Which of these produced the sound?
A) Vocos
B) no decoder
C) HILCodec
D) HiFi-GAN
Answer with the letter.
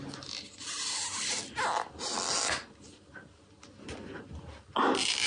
B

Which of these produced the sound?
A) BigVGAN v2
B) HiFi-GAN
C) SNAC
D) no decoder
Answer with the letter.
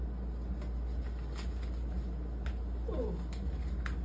D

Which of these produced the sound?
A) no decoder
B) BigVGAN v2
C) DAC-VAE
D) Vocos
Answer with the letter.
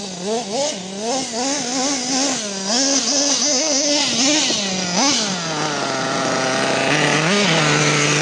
A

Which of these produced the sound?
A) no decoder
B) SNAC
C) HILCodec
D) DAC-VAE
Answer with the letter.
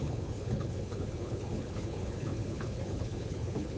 C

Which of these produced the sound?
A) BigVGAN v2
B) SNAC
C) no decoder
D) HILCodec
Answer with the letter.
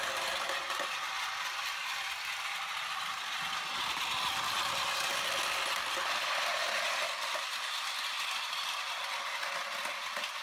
C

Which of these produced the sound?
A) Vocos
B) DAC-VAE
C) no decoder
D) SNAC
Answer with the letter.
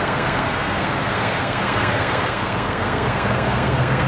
D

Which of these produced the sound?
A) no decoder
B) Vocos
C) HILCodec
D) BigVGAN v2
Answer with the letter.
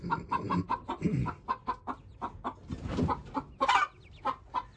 A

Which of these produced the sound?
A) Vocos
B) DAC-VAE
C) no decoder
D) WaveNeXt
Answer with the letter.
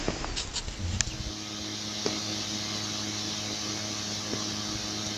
C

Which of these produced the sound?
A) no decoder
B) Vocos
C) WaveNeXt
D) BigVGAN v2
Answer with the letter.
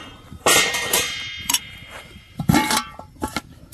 D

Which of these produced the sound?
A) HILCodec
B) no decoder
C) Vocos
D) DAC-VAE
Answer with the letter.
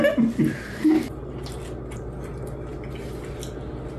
B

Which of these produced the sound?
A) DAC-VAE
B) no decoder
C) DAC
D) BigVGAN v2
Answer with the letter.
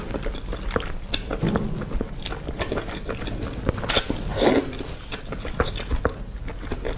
B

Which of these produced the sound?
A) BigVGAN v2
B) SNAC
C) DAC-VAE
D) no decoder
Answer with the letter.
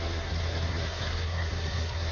B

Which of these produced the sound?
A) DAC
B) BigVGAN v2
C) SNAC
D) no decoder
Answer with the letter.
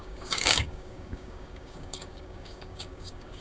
A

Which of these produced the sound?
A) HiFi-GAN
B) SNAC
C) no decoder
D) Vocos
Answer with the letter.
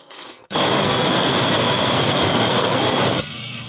B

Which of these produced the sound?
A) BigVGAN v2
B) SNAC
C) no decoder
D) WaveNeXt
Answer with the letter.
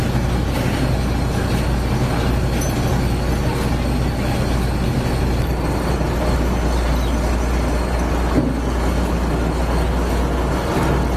C